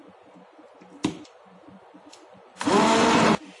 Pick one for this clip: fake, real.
fake